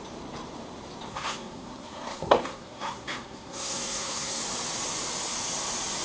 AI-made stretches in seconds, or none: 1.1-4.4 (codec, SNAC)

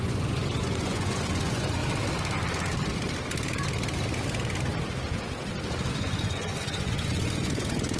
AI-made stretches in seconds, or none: 0.0-1.8 (vocoder, Vocos); 5.9-8.0